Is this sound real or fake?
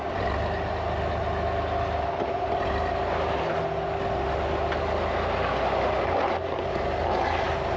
real